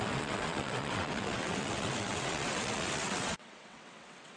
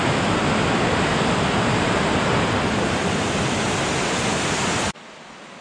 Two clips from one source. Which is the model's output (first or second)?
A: first